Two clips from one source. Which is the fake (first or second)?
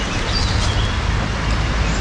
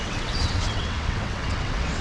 second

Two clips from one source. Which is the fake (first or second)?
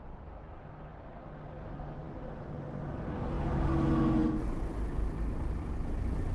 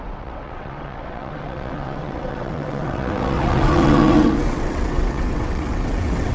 second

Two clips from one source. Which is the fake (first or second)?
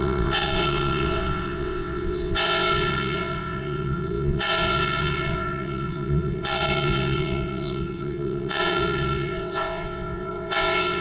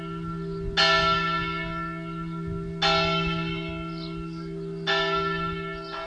first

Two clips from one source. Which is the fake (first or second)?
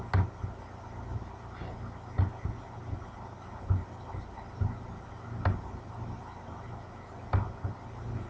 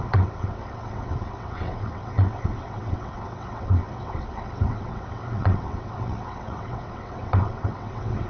second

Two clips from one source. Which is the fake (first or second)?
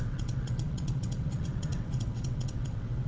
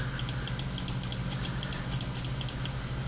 first